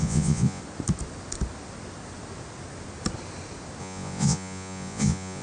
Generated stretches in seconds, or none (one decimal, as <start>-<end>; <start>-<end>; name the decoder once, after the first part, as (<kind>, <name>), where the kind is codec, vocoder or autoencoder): 0.0-0.6 (vocoder, Vocos); 3.8-5.4